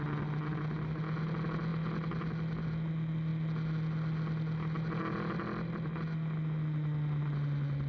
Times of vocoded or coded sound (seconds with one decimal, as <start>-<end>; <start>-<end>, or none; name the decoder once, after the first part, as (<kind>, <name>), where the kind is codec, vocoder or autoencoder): none